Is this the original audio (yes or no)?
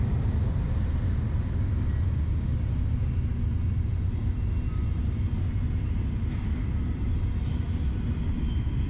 yes